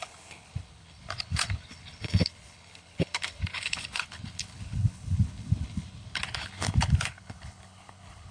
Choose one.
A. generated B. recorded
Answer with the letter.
A